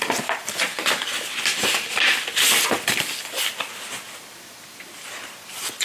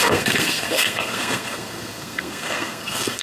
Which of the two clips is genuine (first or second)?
first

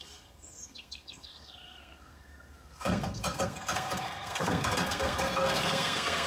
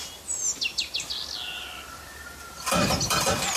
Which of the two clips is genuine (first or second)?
second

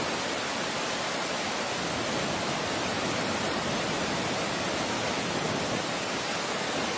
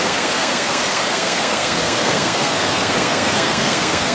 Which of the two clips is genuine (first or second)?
first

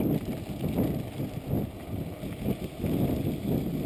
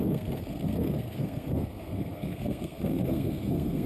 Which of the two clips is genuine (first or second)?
first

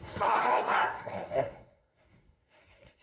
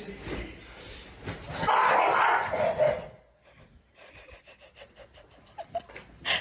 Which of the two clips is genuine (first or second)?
second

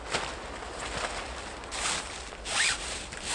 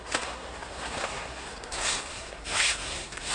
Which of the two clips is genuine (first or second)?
first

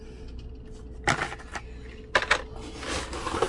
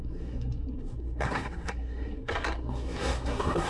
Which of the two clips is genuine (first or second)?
first